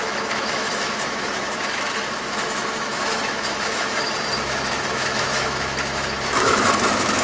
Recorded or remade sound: remade